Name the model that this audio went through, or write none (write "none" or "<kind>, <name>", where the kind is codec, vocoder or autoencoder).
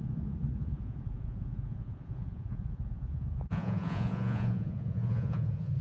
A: vocoder, Vocos